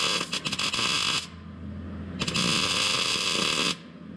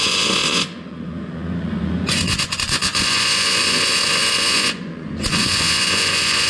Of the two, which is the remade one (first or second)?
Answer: second